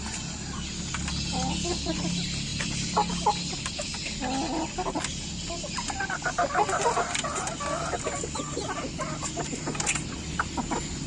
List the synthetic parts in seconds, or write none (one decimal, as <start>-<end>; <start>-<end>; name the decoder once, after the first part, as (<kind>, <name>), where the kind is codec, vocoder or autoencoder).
none